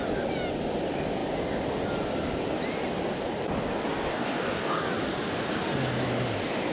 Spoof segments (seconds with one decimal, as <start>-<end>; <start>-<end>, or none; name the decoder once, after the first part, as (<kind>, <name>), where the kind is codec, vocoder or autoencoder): 4.1-4.9 (codec, DAC)